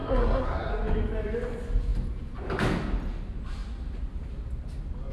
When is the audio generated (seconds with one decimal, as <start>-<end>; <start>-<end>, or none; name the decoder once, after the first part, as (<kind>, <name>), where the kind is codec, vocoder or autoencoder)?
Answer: 0.0-0.7 (codec, SNAC)